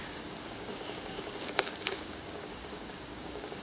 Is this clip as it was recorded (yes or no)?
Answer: no